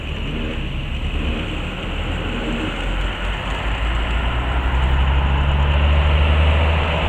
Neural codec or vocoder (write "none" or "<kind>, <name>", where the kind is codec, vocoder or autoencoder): none